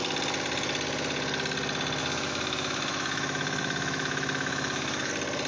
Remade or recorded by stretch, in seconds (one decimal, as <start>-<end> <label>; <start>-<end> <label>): 0.0-2.0 recorded; 2.0-5.1 remade; 5.1-5.5 recorded